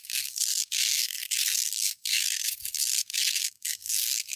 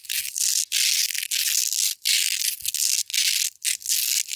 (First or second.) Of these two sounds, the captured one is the second